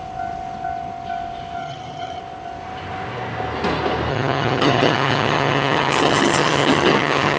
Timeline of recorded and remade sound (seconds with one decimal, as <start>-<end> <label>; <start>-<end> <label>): 0.0-1.6 recorded; 1.6-2.2 remade; 2.2-4.1 recorded; 4.1-7.4 remade